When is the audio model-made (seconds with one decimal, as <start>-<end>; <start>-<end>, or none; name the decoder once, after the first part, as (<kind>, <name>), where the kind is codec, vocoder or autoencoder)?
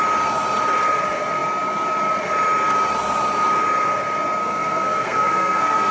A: 4.4-5.9 (codec, SNAC)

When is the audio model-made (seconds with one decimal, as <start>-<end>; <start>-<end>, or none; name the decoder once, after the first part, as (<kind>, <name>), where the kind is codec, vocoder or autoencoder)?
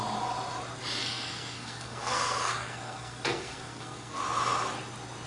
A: 1.0-4.2 (codec, SNAC)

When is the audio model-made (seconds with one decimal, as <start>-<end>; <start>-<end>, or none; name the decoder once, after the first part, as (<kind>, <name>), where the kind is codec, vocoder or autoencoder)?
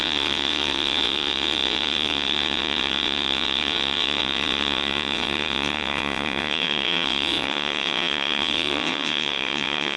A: 0.0-10.0 (vocoder, WaveNeXt)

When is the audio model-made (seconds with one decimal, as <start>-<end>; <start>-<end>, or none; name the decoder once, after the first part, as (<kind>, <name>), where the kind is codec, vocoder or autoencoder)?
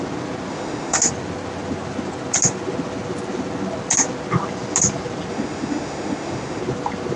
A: 0.5-1.1 (autoencoder, DAC-VAE); 5.3-6.6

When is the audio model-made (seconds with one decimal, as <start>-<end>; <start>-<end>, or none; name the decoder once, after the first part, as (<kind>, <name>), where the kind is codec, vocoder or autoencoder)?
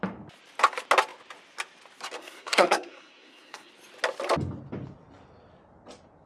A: 2.2-3.7 (codec, SNAC)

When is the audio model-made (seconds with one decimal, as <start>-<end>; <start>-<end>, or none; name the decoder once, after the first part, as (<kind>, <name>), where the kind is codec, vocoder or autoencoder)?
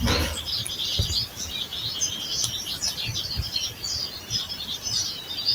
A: none